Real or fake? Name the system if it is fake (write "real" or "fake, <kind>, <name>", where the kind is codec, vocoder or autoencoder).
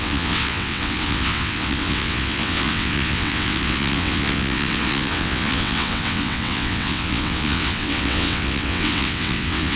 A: fake, vocoder, WaveNeXt